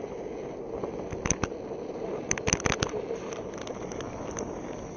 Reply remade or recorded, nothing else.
recorded